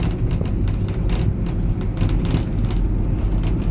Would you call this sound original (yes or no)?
yes